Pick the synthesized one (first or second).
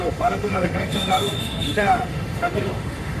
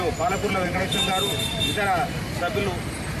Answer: first